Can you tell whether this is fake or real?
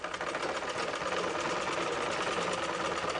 real